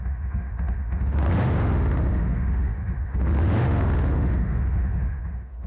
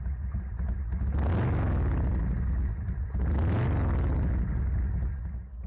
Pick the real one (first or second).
second